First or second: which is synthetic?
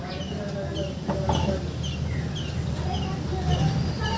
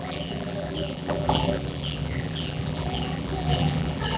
second